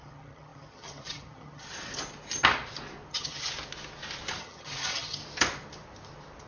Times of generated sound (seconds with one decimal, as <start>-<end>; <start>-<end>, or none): 0.0-1.7; 3.1-3.5; 4.4-5.2